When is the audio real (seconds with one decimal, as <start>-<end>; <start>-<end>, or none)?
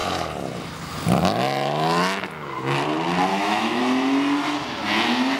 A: 0.0-3.3; 3.8-5.4